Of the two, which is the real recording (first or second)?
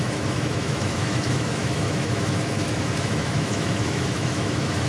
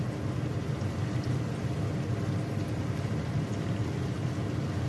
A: second